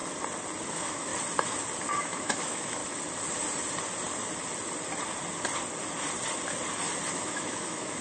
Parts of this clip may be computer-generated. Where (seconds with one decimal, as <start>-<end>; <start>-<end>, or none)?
0.7-1.1; 2.0-2.8; 7.1-8.0